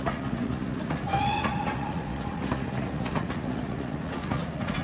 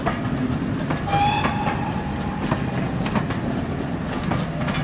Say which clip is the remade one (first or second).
first